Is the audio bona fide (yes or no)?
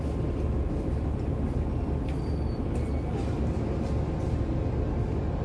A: yes